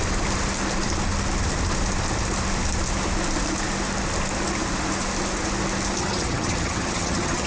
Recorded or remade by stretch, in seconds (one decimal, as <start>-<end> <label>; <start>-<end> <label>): 0.0-6.0 recorded; 6.0-7.5 remade